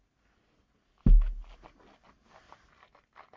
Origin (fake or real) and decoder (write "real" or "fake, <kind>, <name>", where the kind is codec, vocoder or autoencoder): real